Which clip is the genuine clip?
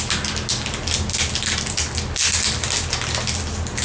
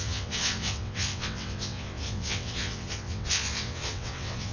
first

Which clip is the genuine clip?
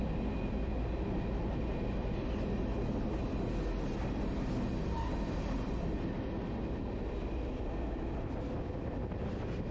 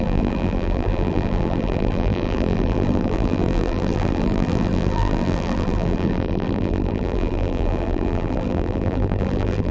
first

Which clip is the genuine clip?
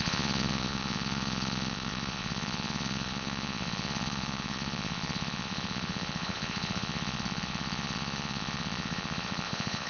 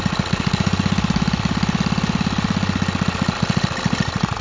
second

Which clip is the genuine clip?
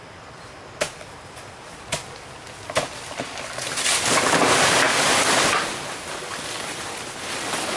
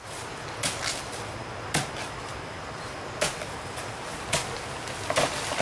second